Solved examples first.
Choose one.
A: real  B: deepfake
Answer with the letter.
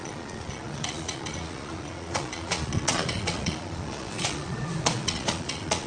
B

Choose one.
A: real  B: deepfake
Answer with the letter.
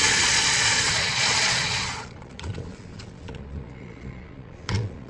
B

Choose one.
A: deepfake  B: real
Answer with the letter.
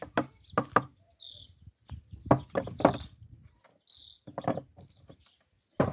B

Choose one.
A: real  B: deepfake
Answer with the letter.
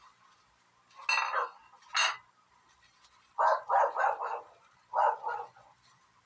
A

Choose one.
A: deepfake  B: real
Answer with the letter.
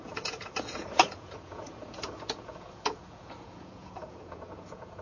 A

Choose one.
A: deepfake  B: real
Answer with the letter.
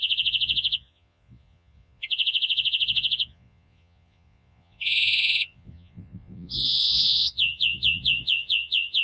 A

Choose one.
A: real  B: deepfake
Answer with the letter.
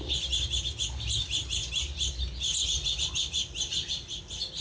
A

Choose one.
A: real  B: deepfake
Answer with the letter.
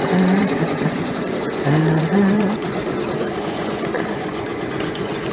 B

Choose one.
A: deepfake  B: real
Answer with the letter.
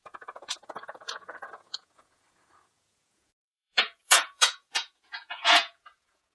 A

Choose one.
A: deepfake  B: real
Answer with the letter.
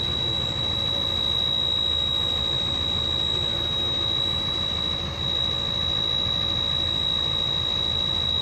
B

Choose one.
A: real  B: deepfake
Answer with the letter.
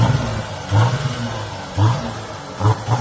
A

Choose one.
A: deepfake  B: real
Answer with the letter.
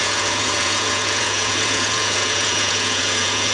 A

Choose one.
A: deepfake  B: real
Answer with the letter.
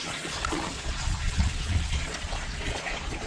A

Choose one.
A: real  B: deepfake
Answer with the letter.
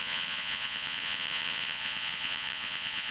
B